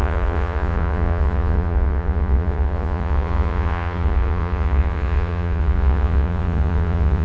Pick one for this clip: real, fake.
fake